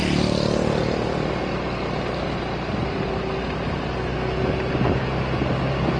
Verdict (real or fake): real